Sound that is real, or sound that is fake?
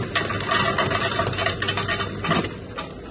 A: real